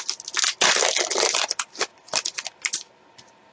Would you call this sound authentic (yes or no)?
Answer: yes